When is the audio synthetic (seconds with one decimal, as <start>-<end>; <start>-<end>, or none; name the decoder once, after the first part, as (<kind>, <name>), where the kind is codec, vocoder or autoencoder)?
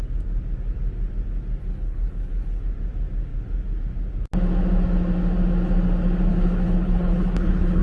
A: 1.6-2.6 (codec, HILCodec); 6.3-7.8